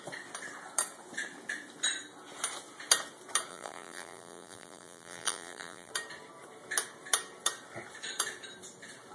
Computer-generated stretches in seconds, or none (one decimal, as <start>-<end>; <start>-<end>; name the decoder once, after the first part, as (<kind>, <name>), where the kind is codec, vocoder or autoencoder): 3.5-5.9 (vocoder, BigVGAN v2)

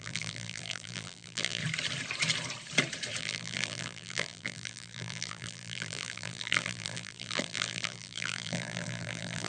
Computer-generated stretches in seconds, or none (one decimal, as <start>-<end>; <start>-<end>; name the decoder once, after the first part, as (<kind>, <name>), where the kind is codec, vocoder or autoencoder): 0.0-1.6 (vocoder, BigVGAN v2); 3.2-9.5

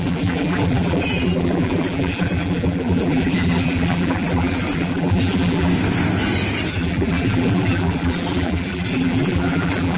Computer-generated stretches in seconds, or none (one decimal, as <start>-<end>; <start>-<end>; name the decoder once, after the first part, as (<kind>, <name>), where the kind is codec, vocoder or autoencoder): 0.0-5.7 (vocoder, BigVGAN v2); 6.7-10.0